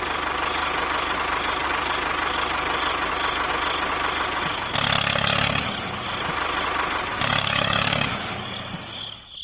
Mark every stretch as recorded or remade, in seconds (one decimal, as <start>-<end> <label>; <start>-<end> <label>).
0.0-7.1 recorded; 7.1-8.3 remade; 8.3-9.4 recorded